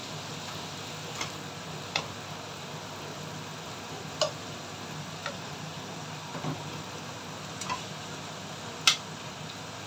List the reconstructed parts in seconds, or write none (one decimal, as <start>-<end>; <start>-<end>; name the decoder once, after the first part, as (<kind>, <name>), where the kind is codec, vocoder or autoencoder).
5.2-6.2 (vocoder, BigVGAN v2)